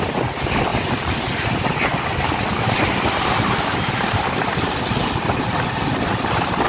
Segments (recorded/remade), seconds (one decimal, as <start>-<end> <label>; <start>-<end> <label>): 0.0-6.7 recorded